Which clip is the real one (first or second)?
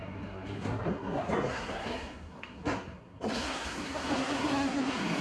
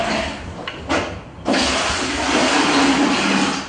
second